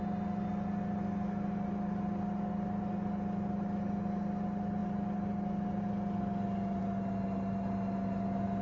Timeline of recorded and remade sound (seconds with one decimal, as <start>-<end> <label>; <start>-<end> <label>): 0.0-8.6 recorded